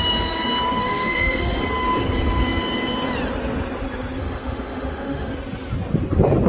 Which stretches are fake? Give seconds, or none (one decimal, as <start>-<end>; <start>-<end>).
0.8-1.6; 4.2-5.3